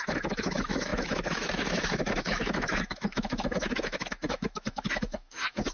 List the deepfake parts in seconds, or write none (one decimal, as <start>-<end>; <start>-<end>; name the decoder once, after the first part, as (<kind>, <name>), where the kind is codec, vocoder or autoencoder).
0.0-5.7 (autoencoder, DAC-VAE)